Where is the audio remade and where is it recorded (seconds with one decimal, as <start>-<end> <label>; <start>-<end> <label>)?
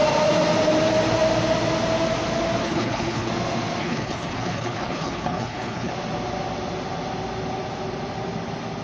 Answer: 0.0-2.6 recorded; 2.6-3.3 remade; 3.3-3.8 recorded; 3.8-5.9 remade; 5.9-8.8 recorded